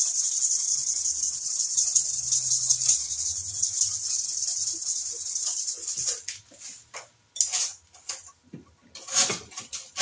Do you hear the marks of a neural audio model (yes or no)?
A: no